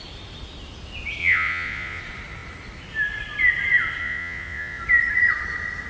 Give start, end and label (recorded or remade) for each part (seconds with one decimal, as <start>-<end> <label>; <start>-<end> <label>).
0.0-1.2 recorded; 1.2-2.0 remade; 2.0-4.0 recorded; 4.0-4.8 remade; 4.8-5.9 recorded